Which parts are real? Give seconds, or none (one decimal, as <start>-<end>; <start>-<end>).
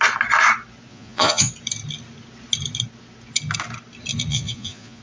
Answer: 0.0-0.9; 1.5-4.3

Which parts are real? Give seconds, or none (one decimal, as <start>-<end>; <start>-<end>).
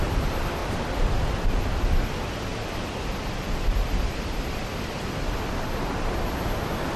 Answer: 0.0-0.6; 1.8-7.0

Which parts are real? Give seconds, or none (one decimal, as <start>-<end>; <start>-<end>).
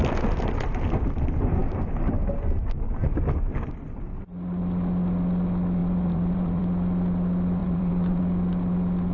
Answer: 0.0-3.0; 3.7-5.8; 6.6-7.6; 8.2-9.1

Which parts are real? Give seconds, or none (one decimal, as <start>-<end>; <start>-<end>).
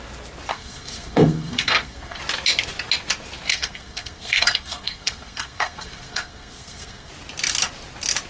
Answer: 0.0-0.5; 2.2-3.5; 7.1-8.3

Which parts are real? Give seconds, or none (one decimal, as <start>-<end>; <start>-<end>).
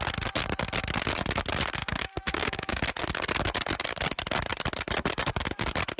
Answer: 0.0-1.8; 2.8-6.0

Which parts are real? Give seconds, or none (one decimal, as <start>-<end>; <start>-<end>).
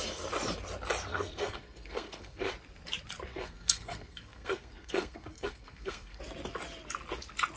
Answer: 0.0-1.1; 2.5-3.3; 6.2-7.6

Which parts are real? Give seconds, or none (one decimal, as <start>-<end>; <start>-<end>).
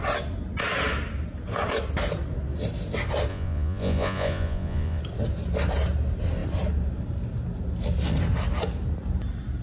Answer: 0.0-3.3; 5.0-9.6